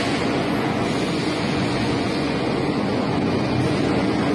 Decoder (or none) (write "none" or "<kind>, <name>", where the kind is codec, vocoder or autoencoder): vocoder, Vocos